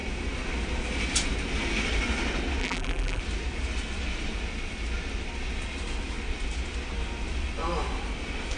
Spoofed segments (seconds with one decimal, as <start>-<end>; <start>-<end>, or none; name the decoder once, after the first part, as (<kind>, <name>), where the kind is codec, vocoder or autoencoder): 2.6-3.2 (vocoder, BigVGAN v2)